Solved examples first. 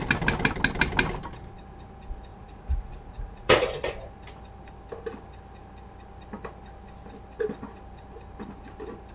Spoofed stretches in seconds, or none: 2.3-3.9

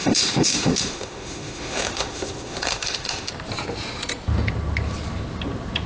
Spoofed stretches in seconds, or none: 0.0-3.3

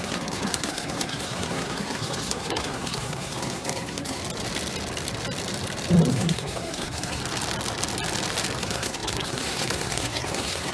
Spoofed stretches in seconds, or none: 0.0-4.2; 6.1-7.2; 8.6-10.7

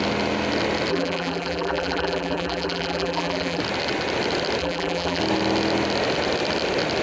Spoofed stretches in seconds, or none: 0.9-3.6; 4.6-5.2

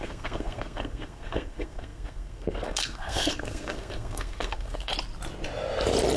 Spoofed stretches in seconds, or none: 0.0-4.9

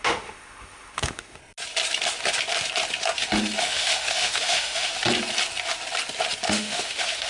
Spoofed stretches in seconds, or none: 0.0-1.4; 3.6-4.9; 6.5-7.3